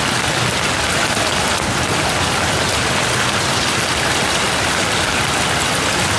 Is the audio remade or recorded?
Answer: recorded